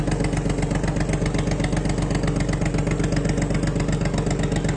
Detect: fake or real real